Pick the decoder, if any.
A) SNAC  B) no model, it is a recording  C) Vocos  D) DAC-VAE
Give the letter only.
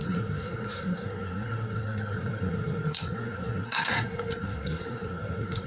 A